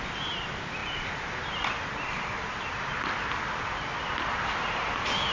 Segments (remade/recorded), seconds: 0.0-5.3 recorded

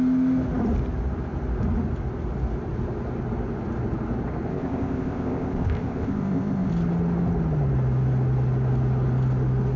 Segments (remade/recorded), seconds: 0.0-4.5 recorded; 4.5-6.7 remade; 6.7-9.8 recorded

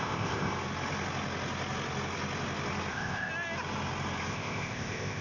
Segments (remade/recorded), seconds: 0.0-0.5 remade; 0.5-2.9 recorded; 2.9-3.3 remade; 3.3-4.3 recorded; 4.3-5.2 remade

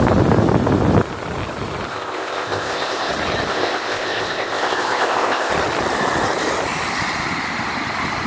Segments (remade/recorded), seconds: 0.0-1.9 recorded; 1.9-3.1 remade; 3.1-3.5 recorded; 3.5-5.5 remade; 5.5-8.3 recorded

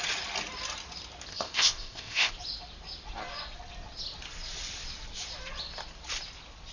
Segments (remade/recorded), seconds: 0.0-1.3 recorded; 1.3-2.3 remade; 2.3-6.7 recorded

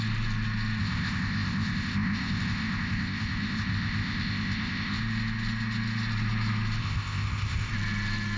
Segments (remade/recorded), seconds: 0.0-0.8 recorded; 0.8-5.0 remade; 5.0-6.8 recorded; 6.8-7.7 remade; 7.7-8.4 recorded

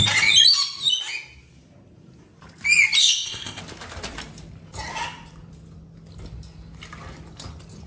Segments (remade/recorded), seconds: 0.0-3.0 recorded; 3.0-3.6 remade; 3.6-7.9 recorded

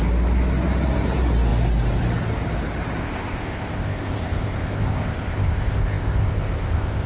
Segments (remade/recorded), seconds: 0.0-3.0 recorded; 3.0-7.1 remade